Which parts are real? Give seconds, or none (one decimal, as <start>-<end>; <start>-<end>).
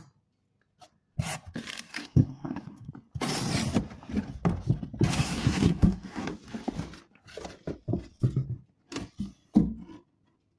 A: 0.0-1.9; 2.9-5.1; 6.3-10.6